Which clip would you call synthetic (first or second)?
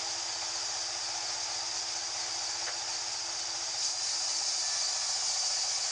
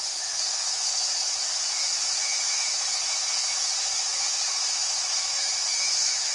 second